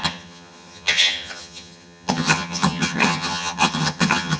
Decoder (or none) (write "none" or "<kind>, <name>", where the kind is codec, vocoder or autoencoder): vocoder, HiFi-GAN